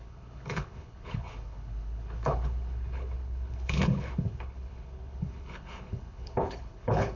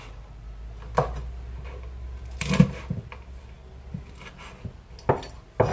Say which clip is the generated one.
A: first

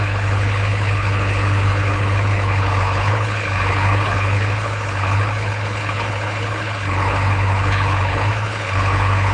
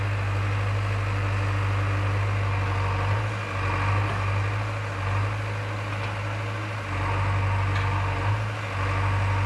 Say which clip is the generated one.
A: first